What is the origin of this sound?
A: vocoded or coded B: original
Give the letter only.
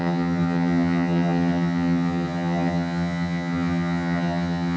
A